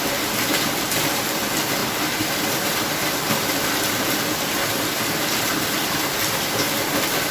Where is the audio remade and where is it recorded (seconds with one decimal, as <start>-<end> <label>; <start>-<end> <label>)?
0.0-1.8 recorded; 1.8-5.9 remade; 5.9-7.3 recorded